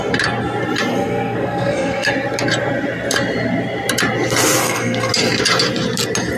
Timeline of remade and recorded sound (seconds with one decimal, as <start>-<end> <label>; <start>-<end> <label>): 0.0-0.9 recorded; 0.9-2.1 remade; 2.1-4.6 recorded; 4.6-5.1 remade; 5.1-6.4 recorded